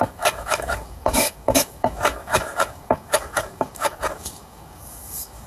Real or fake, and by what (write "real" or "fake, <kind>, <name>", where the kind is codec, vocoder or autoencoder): fake, codec, DAC